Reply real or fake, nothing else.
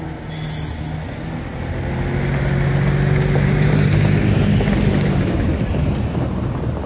real